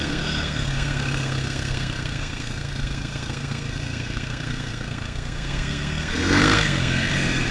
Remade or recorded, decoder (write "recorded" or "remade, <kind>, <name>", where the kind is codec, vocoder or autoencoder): remade, codec, SNAC